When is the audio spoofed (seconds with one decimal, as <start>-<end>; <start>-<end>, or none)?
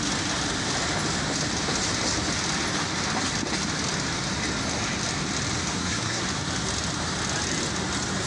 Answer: 5.7-6.2